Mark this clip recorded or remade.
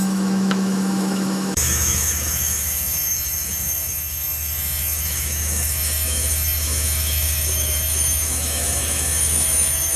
remade